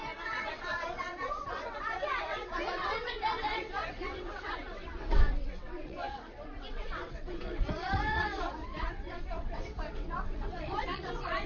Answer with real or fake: fake